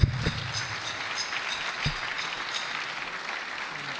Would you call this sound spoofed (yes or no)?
no